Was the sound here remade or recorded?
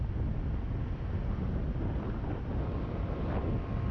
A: recorded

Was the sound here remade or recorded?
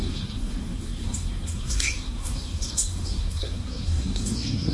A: remade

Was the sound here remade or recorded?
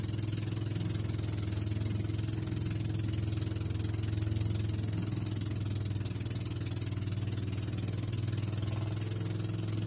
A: recorded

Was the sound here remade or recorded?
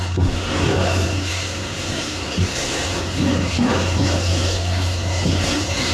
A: remade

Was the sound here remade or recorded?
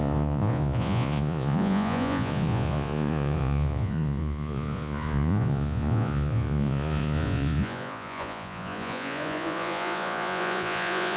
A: remade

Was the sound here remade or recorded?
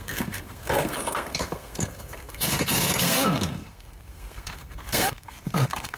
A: remade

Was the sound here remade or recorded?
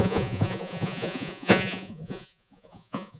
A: remade